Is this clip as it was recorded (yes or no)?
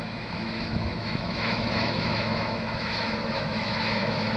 no